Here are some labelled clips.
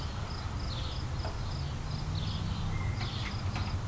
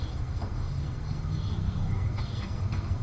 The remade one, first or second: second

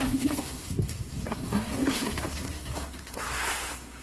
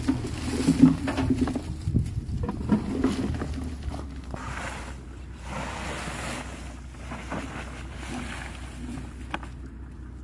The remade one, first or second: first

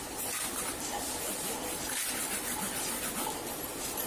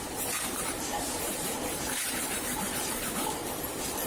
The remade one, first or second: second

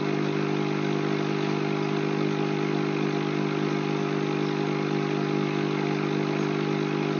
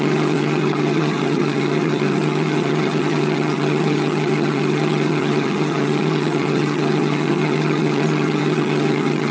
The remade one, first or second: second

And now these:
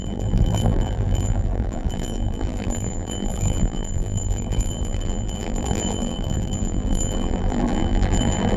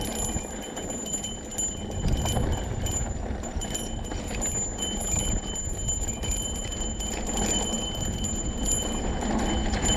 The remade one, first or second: first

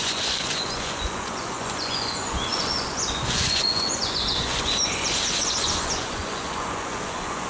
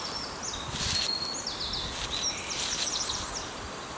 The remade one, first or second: first